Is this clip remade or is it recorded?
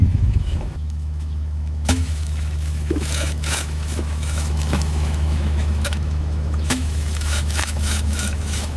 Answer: remade